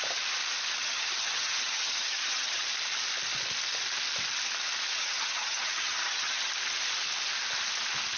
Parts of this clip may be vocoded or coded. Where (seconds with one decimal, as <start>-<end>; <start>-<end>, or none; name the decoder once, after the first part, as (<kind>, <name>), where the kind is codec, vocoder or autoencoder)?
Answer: 0.8-2.6 (vocoder, HiFi-GAN); 4.9-6.5